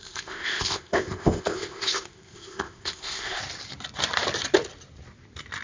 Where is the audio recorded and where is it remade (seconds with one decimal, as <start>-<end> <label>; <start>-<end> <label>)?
0.0-3.4 remade; 3.4-5.6 recorded